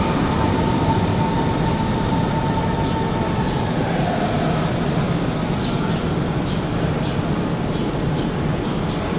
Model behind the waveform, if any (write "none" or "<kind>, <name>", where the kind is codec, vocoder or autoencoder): none